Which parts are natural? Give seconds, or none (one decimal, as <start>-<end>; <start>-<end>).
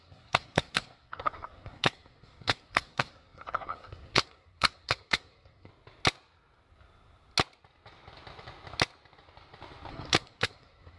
5.7-9.9